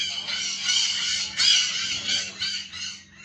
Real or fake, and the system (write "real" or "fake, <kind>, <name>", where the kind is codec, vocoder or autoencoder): real